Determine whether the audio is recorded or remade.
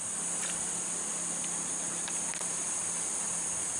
recorded